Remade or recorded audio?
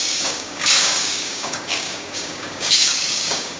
remade